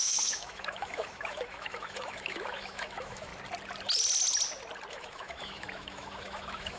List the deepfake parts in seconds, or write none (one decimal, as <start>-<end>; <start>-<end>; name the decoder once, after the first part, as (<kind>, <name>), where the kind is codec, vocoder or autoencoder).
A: 0.0-3.3 (autoencoder, DAC-VAE); 4.9-6.8